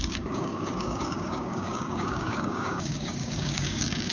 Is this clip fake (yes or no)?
yes